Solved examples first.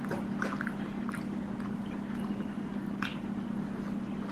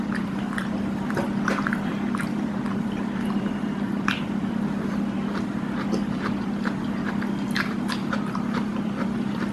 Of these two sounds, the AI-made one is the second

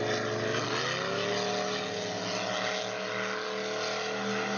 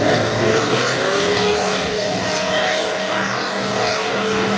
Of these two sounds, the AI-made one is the second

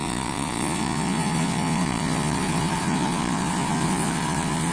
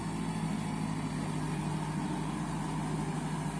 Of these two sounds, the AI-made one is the first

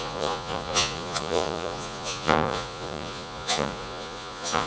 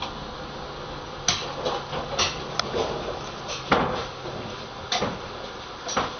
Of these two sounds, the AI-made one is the first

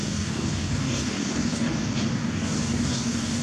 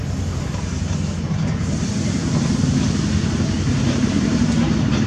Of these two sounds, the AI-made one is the first